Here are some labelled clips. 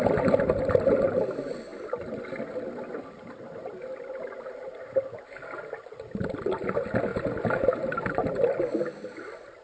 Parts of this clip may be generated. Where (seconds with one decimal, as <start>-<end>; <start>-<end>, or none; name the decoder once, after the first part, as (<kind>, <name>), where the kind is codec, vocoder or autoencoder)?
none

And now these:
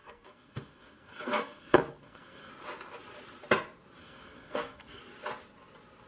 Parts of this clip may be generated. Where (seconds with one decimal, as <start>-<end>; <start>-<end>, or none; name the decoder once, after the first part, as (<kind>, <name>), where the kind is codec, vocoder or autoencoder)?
0.0-2.5 (codec, SNAC); 4.0-5.0

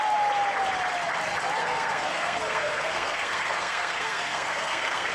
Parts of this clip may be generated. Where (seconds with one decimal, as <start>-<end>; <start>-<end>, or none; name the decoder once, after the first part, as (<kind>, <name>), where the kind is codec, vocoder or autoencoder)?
1.6-5.1 (codec, SNAC)

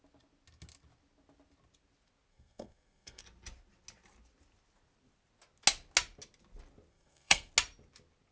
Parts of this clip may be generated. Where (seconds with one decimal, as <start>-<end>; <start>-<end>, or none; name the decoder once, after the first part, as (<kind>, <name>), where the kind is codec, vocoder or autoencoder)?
2.3-3.2 (codec, SNAC); 6.9-7.5

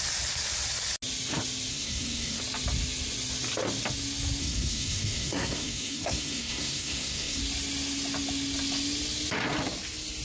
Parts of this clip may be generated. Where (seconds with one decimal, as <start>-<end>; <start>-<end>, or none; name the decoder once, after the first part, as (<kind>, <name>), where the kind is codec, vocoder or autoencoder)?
1.7-2.4 (codec, SNAC); 4.4-7.4